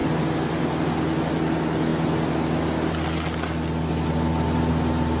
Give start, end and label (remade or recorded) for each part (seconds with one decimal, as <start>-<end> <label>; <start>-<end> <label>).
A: 0.0-5.2 recorded